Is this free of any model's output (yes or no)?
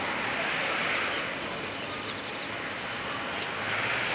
yes